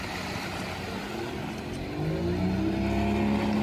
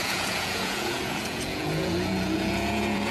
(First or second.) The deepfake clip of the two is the second